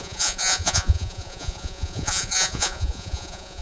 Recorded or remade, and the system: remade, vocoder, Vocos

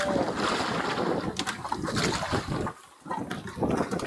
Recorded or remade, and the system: recorded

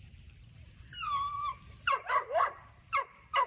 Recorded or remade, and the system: remade, vocoder, BigVGAN v2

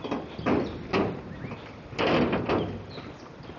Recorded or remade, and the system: recorded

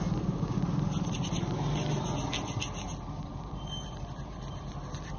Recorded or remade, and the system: recorded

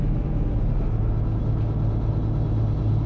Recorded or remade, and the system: recorded